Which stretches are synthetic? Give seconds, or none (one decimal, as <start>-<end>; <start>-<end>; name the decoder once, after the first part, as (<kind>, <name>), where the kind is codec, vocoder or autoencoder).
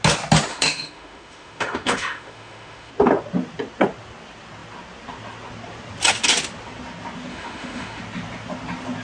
0.5-2.9 (autoencoder, DAC-VAE); 7.3-8.0